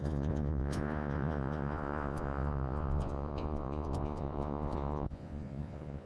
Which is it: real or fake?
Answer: fake